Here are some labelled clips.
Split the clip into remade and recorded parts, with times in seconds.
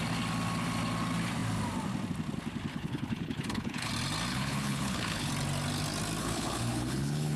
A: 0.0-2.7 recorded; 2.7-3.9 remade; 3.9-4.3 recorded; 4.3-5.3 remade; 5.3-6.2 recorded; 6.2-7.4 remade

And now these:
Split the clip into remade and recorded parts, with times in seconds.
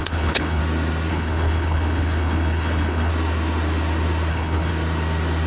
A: 0.0-0.6 remade; 0.6-1.1 recorded; 1.1-3.1 remade; 3.1-4.3 recorded; 4.3-4.7 remade; 4.7-5.5 recorded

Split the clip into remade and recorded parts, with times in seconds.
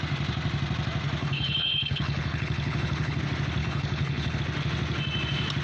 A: 0.0-1.2 recorded; 1.2-3.2 remade; 3.2-3.6 recorded; 3.6-4.4 remade; 4.4-5.6 recorded